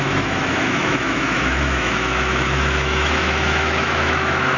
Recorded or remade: remade